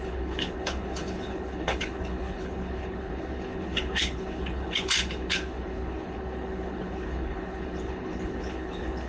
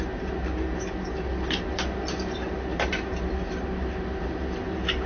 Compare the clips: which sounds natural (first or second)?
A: second